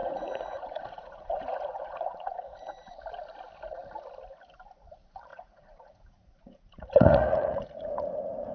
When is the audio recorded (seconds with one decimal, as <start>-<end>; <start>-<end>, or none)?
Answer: 2.9-5.3

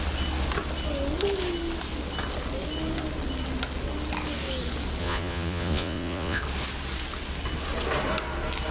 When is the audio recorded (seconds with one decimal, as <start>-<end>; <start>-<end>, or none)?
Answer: 0.0-5.0; 6.4-8.7

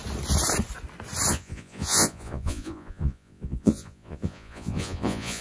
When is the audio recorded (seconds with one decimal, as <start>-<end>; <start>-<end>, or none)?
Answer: 0.0-1.3

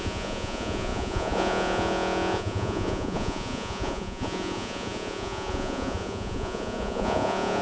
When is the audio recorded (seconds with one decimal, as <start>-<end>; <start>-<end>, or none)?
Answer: none

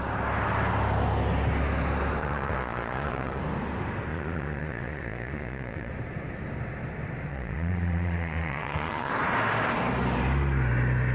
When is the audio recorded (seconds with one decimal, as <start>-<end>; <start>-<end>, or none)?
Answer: 0.0-2.2; 3.4-4.1; 5.9-7.3; 9.1-11.1

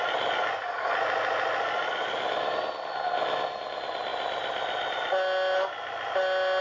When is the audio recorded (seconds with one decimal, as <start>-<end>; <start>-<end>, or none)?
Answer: 0.0-6.6

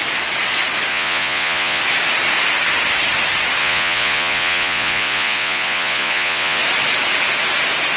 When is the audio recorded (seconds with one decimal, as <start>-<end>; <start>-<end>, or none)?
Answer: 0.0-0.9; 1.8-3.6; 6.6-8.0